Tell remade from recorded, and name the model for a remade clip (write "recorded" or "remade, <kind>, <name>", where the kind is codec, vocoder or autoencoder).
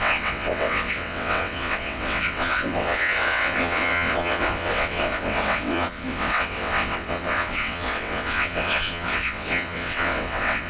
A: remade, vocoder, WaveNeXt